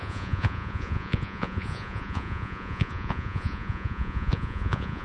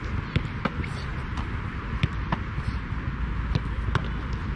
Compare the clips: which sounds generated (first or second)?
first